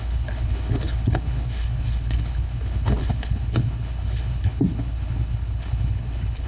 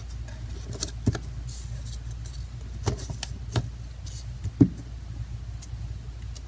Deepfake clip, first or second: first